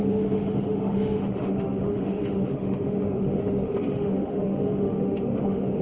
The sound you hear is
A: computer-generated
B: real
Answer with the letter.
A